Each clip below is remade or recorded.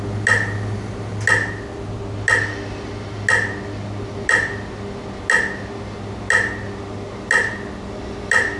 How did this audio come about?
recorded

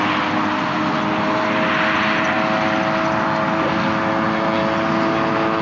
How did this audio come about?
recorded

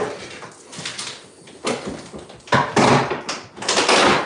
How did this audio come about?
recorded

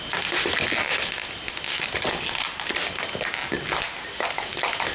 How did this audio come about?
recorded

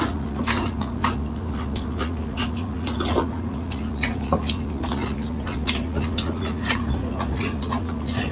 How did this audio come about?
remade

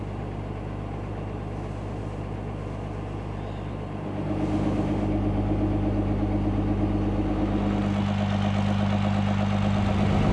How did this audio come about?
recorded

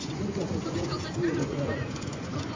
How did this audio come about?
remade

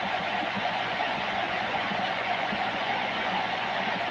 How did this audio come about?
remade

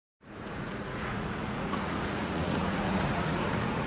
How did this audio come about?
remade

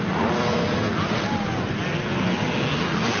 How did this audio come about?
recorded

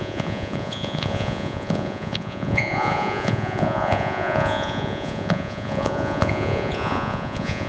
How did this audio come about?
remade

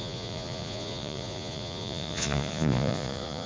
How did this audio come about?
remade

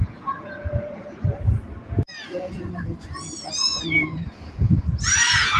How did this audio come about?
remade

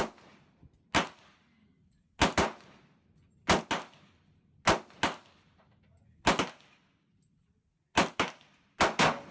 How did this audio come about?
recorded